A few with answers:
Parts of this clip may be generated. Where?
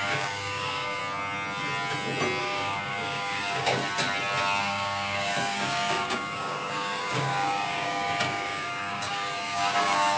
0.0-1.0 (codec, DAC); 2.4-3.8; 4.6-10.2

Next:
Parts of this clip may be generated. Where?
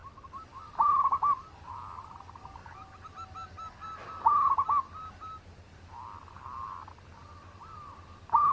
none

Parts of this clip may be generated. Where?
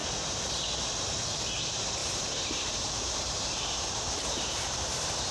2.0-5.3 (vocoder, BigVGAN v2)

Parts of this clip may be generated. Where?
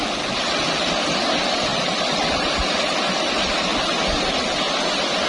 none